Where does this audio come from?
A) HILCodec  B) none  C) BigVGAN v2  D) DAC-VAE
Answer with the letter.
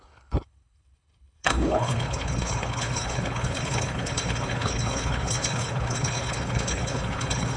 A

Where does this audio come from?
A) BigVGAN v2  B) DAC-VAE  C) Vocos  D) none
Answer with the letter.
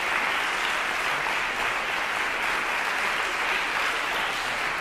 D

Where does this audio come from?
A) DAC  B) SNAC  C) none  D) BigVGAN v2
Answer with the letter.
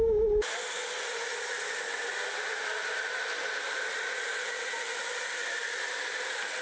C